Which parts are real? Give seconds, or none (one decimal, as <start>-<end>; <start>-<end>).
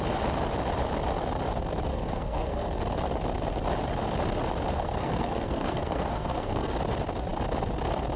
0.0-1.9; 2.8-4.7; 6.7-8.2